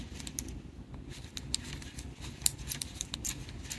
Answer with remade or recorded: recorded